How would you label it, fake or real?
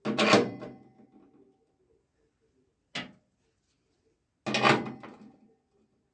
real